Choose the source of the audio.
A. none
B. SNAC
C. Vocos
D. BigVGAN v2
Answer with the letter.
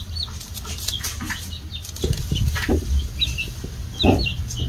A